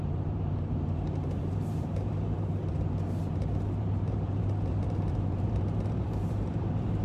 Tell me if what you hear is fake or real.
fake